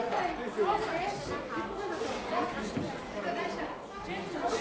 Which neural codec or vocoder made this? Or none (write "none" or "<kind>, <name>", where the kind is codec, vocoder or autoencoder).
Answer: none